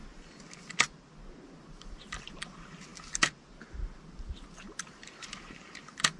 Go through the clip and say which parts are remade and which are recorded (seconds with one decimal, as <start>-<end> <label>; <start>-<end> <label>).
0.0-1.6 recorded; 1.6-2.9 remade; 2.9-3.5 recorded; 3.5-6.2 remade